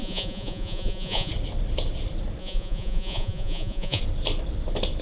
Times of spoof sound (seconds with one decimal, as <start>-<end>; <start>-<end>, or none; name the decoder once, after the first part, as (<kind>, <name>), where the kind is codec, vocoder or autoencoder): 0.0-1.3 (vocoder, Vocos); 2.4-4.0